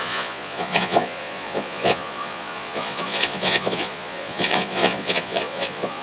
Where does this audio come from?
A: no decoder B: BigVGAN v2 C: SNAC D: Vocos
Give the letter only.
D